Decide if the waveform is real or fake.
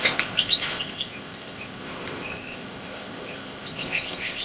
fake